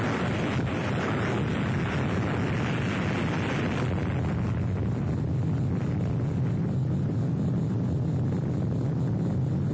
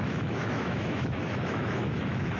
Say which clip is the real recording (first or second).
first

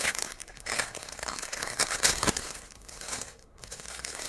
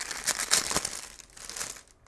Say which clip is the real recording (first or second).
second